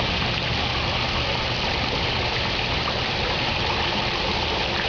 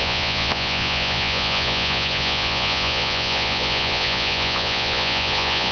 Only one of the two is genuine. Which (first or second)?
first